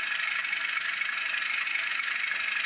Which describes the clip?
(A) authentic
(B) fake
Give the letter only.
A